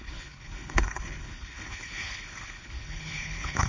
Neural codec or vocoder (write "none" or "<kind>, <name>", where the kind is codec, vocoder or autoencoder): codec, HILCodec